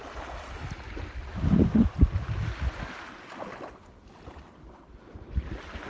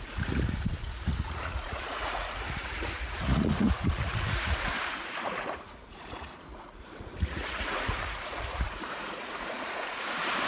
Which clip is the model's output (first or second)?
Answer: second